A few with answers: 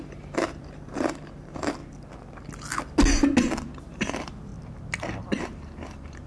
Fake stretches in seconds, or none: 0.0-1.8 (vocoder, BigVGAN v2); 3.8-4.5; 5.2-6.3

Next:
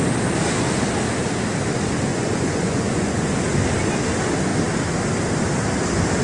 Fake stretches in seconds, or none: 2.1-3.4 (vocoder, Vocos)

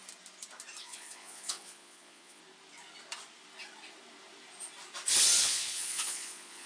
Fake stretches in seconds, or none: 0.8-2.4 (vocoder, Vocos); 5.4-6.7

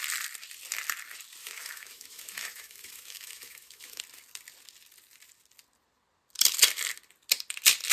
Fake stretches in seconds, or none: 1.4-4.0 (autoencoder, DAC-VAE)